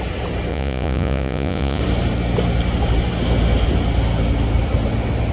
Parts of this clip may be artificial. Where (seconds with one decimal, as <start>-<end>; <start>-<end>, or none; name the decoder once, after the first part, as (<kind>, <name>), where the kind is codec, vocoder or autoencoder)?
0.5-1.8 (vocoder, Vocos)